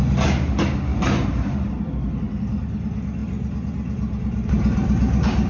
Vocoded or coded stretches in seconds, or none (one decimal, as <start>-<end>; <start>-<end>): 0.9-1.8; 3.2-5.5